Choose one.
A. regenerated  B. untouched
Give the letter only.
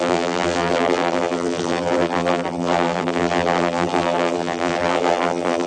A